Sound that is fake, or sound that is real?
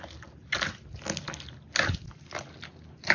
real